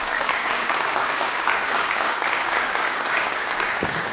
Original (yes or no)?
no